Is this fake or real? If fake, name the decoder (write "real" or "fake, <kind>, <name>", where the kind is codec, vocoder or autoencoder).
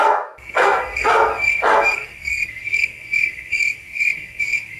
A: fake, codec, SNAC